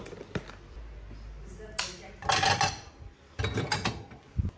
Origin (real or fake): real